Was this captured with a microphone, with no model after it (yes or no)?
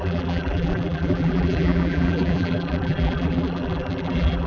no